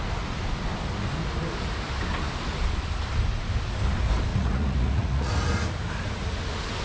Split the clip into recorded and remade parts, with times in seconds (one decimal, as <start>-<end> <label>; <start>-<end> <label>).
0.0-4.3 recorded; 4.3-5.3 remade; 5.3-6.8 recorded